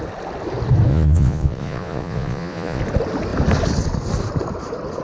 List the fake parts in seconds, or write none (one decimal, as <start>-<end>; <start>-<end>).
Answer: 0.9-2.8